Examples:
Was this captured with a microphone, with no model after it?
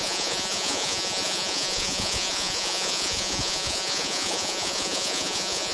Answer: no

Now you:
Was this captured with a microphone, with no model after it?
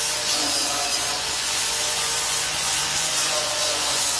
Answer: no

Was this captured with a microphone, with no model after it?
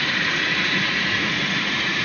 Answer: no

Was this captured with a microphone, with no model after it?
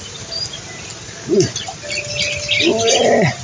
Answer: yes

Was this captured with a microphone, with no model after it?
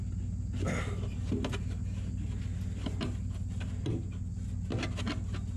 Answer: yes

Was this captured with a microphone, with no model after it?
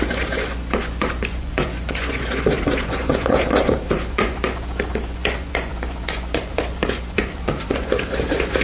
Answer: no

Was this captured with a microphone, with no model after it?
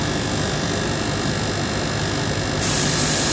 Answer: yes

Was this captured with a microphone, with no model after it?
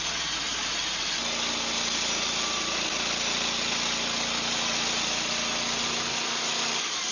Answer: yes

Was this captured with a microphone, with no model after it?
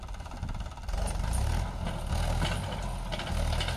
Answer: yes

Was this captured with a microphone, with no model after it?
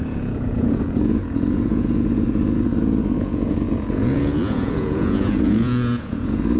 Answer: no